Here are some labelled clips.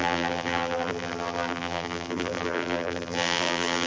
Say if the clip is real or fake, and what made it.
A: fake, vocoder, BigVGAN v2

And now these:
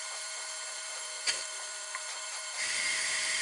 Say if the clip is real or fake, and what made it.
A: fake, vocoder, BigVGAN v2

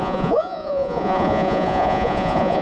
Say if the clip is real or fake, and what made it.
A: fake, vocoder, Vocos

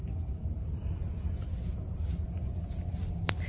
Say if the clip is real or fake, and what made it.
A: real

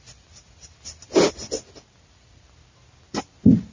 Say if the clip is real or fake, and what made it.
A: real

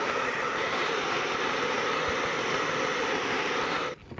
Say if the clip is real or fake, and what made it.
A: real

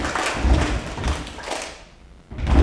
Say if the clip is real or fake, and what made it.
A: real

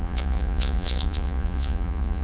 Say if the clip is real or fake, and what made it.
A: fake, vocoder, Vocos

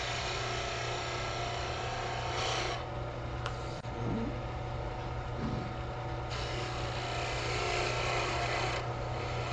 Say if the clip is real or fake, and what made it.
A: real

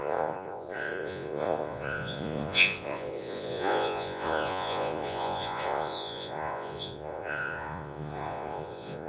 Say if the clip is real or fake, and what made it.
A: fake, vocoder, Vocos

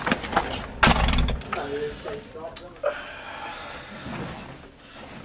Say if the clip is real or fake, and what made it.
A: real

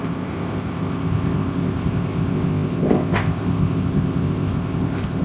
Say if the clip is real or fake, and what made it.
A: fake, codec, ZipCodec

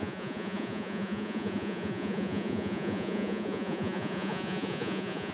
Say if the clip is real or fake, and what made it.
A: fake, vocoder, Vocos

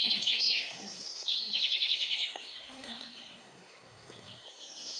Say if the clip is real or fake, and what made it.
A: fake, codec, SNAC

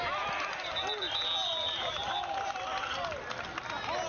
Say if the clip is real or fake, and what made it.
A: real